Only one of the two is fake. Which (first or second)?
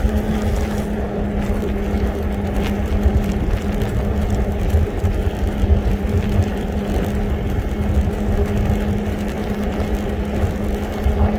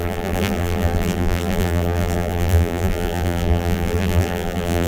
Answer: second